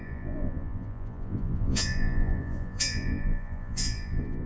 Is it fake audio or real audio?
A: fake